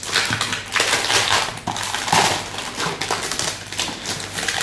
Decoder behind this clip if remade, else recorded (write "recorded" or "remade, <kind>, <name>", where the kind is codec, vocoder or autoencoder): recorded